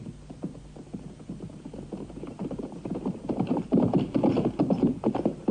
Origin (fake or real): real